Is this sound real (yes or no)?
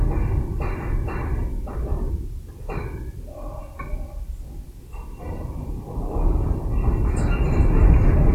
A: yes